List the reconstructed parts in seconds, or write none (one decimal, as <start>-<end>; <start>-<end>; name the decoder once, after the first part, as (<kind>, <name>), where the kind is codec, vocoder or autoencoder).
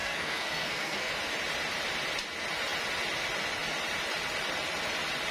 0.0-1.1 (codec, SNAC)